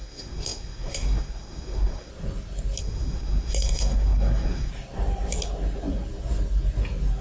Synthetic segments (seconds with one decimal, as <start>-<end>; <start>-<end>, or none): 0.0-2.1; 2.8-4.7